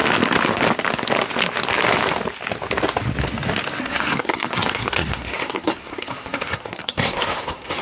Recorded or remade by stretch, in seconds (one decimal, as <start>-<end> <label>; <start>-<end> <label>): 0.0-3.8 recorded; 3.8-7.8 remade

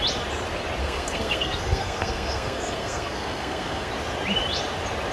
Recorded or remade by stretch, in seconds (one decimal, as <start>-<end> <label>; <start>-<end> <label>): 0.0-0.8 recorded; 0.8-3.9 remade; 3.9-5.1 recorded

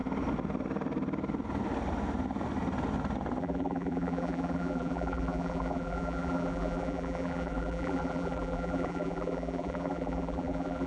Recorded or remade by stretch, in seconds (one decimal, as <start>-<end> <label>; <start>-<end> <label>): 0.0-3.4 recorded; 3.4-10.9 remade

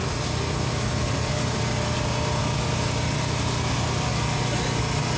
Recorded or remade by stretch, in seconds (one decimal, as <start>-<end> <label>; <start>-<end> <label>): 0.0-5.2 recorded

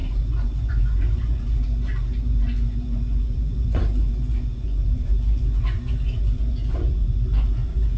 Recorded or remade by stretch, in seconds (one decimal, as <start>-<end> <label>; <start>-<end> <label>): 0.0-8.0 remade

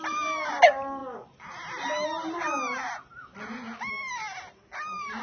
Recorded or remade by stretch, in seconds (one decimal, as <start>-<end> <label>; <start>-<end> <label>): 0.0-5.2 recorded

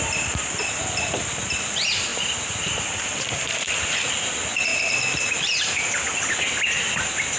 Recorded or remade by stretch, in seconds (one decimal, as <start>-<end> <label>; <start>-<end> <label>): 0.0-7.4 recorded